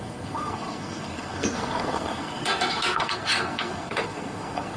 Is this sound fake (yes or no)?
yes